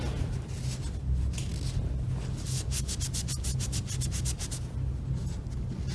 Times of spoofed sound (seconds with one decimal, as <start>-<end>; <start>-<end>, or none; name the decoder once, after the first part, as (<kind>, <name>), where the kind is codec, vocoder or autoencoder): none

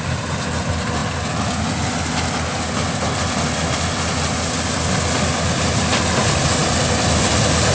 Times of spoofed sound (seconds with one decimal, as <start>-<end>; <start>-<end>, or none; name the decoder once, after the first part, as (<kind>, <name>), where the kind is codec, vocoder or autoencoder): none

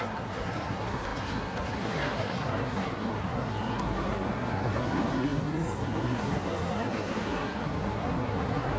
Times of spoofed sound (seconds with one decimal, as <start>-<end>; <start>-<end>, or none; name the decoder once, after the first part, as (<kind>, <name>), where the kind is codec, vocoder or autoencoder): 0.0-8.8 (codec, SNAC)

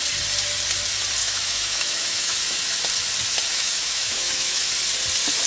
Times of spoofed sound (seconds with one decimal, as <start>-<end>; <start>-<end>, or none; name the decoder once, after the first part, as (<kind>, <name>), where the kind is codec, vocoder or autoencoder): 1.2-2.4 (autoencoder, DAC-VAE); 3.5-4.7

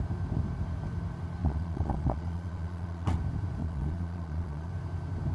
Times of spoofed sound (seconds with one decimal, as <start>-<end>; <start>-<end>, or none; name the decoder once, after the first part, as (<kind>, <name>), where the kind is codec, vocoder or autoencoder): 1.4-3.2 (vocoder, Vocos); 3.6-4.7

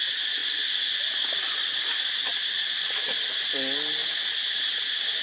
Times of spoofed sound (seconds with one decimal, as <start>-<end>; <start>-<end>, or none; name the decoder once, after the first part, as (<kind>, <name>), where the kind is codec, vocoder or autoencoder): none

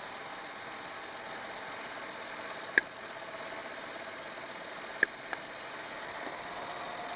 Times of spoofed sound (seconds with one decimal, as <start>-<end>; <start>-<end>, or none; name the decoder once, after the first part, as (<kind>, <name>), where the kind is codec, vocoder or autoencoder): none